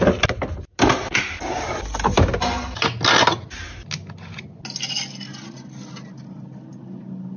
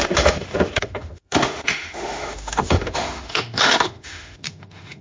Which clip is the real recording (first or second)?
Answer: first